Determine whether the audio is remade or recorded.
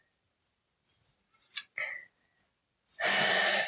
recorded